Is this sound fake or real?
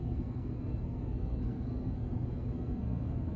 fake